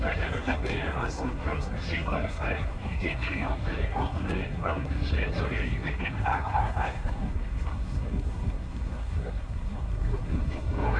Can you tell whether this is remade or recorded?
remade